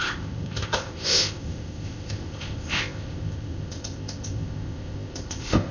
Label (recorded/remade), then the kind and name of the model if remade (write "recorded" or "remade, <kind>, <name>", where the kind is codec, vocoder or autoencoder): remade, codec, ZipCodec